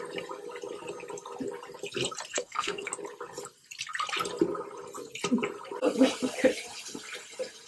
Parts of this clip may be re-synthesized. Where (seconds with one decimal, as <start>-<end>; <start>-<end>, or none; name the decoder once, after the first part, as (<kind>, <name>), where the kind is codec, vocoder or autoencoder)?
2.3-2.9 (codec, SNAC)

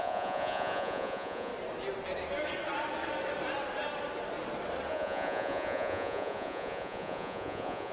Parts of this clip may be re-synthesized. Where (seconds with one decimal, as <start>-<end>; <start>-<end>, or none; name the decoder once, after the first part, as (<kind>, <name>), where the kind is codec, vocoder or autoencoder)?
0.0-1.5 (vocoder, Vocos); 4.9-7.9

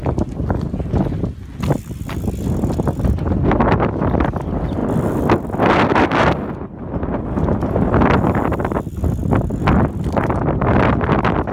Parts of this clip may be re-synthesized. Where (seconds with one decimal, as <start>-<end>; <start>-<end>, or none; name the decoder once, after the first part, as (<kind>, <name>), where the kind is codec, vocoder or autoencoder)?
none